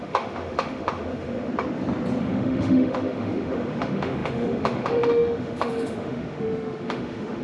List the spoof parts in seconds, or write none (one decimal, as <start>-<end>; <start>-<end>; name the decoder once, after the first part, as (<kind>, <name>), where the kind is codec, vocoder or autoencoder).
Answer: 0.0-1.5 (autoencoder, DAC-VAE); 2.2-7.4